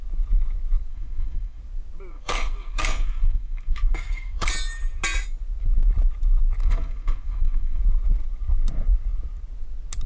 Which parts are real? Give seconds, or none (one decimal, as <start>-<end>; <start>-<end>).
0.0-0.9; 1.6-2.1; 4.5-6.6; 7.8-10.1